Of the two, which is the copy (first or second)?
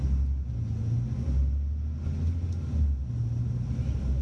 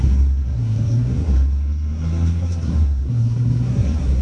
second